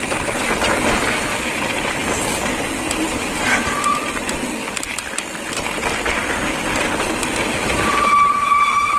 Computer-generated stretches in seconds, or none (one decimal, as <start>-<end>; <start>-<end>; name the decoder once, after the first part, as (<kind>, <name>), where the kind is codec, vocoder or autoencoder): none

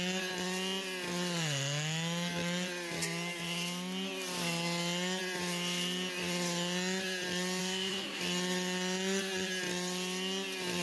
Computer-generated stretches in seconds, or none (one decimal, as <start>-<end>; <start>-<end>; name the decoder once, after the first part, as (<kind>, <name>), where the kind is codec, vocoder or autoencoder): 7.6-8.2 (codec, SNAC)

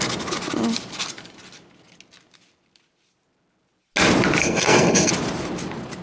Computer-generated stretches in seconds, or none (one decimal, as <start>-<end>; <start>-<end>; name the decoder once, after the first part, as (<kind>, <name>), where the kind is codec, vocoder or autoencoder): 4.4-5.1 (codec, SNAC)